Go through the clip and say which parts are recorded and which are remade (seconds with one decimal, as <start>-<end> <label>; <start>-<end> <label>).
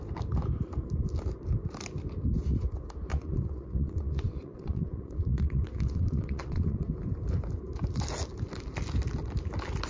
0.0-3.1 recorded; 3.1-6.9 remade; 6.9-9.9 recorded